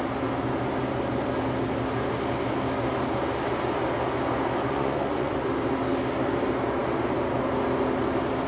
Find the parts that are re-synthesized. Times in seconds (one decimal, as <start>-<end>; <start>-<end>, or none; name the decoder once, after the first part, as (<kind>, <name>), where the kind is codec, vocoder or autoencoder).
4.7-5.4 (vocoder, Vocos)